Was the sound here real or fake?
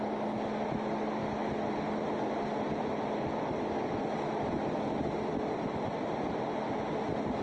real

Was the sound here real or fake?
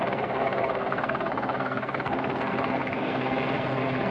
fake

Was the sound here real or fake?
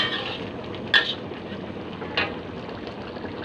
real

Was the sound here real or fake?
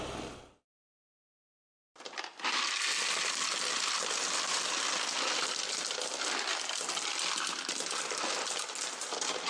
real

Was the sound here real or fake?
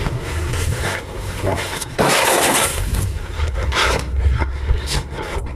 fake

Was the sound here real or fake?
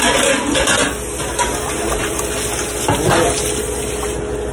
real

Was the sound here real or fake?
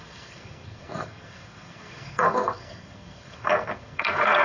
fake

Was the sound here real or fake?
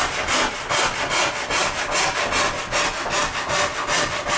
real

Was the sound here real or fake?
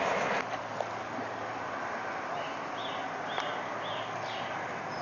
real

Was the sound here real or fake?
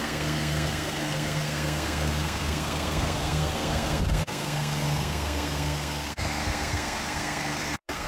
fake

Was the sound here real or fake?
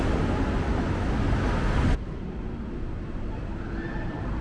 real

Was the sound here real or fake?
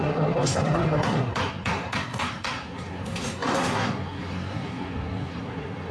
fake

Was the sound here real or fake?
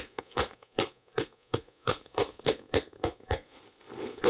fake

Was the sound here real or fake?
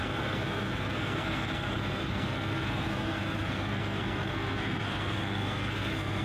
fake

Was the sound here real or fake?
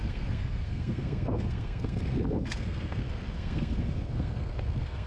fake